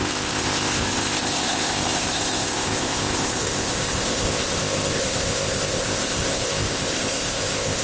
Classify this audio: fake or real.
fake